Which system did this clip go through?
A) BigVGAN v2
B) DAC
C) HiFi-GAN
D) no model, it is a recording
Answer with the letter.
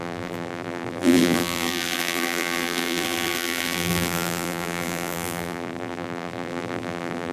A